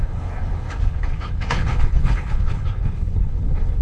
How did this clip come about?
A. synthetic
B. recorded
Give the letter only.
A